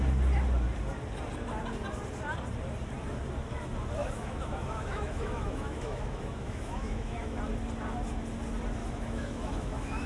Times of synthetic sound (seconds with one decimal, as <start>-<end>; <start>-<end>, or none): 4.0-7.4; 8.8-10.1